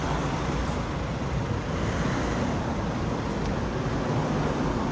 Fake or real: real